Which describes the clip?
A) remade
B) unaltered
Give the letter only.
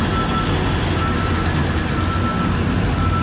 B